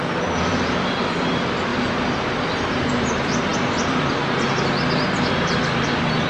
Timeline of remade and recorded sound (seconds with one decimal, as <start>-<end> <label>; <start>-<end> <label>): 0.0-1.7 remade; 1.7-2.9 recorded; 2.9-6.3 remade